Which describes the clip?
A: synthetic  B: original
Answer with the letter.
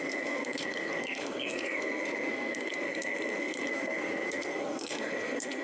A